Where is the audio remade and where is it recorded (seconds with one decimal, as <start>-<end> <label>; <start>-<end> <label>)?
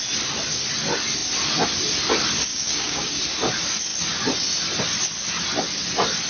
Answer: 0.0-2.5 recorded; 2.5-3.2 remade; 3.2-6.3 recorded